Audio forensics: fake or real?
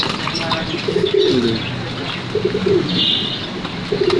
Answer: real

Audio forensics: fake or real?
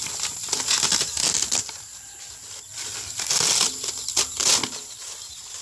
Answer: real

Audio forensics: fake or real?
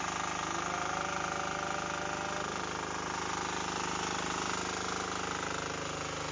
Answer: real